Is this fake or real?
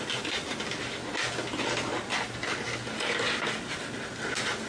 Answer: real